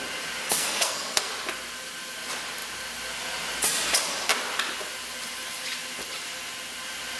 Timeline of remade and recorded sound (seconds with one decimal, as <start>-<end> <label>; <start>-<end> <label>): 0.0-0.4 recorded; 0.4-1.3 remade; 1.3-7.2 recorded